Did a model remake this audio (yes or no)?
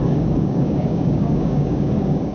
yes